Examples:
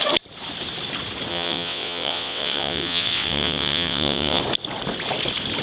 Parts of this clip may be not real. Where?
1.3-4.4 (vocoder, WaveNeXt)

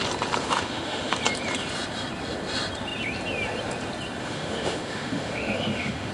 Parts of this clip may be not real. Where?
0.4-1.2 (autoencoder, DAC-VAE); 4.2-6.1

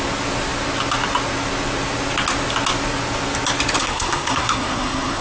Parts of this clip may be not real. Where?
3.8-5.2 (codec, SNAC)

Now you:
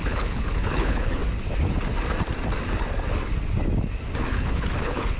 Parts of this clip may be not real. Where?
0.0-1.2 (codec, HILCodec); 4.3-5.2

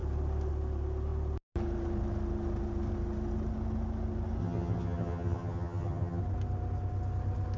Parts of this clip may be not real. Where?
4.4-6.2 (vocoder, HiFi-GAN)

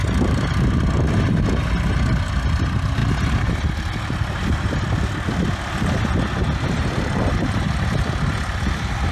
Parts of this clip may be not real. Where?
0.0-1.4 (vocoder, BigVGAN v2)

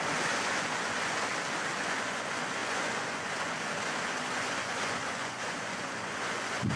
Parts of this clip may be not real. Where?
0.0-1.3 (vocoder, Vocos); 1.8-6.8